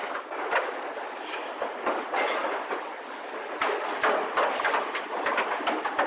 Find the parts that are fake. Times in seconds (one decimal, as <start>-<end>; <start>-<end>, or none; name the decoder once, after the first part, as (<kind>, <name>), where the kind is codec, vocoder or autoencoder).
none